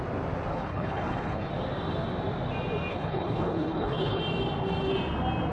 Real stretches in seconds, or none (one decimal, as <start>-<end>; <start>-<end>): 0.0-0.5; 1.5-2.9; 4.2-5.5